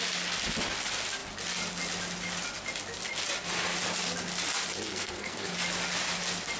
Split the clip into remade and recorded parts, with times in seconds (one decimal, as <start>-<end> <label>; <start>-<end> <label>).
0.0-4.9 recorded; 4.9-5.5 remade; 5.5-6.6 recorded